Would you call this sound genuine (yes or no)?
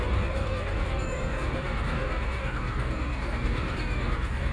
no